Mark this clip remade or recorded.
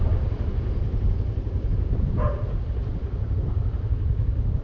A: recorded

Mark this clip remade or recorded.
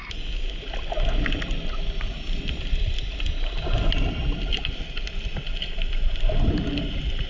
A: recorded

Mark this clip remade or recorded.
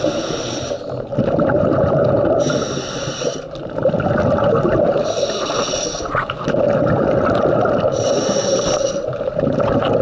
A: recorded